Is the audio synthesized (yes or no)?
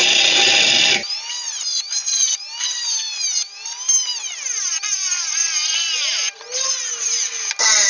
no